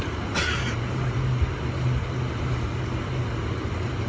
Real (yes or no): yes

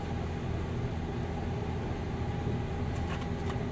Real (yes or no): yes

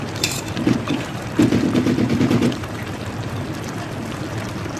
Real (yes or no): no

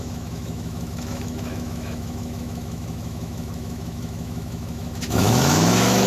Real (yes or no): no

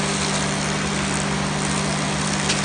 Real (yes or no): yes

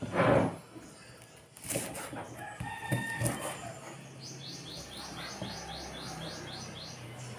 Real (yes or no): yes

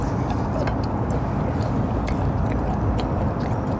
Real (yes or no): yes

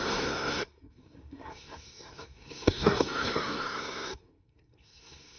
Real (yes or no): no